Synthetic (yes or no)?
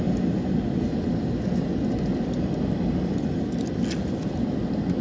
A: no